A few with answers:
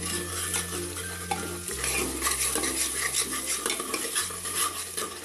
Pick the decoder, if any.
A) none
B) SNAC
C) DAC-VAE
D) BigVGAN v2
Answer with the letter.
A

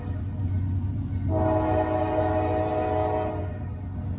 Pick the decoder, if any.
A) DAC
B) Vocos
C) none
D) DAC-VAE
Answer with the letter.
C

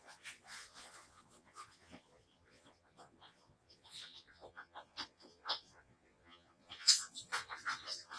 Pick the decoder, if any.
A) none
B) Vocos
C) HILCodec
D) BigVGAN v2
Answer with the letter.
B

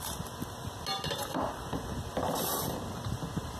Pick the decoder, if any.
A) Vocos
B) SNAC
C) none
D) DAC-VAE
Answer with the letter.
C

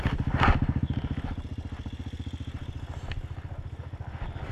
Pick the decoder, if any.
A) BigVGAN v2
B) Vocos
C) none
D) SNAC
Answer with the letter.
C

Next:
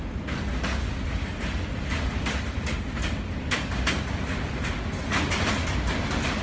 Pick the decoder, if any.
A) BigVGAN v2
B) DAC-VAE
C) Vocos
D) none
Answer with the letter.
D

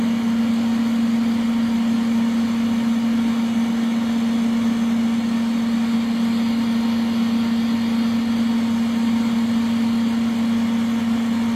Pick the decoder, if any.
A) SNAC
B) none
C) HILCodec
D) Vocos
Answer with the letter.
B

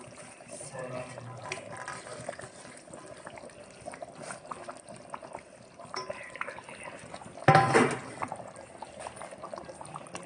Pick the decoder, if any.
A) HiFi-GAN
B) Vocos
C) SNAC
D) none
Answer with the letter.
D